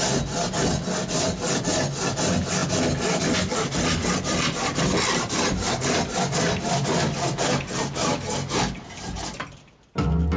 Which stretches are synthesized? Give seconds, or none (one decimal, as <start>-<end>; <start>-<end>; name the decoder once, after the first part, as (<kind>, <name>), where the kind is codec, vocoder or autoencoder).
none